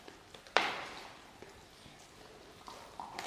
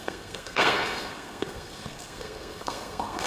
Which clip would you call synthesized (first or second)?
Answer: second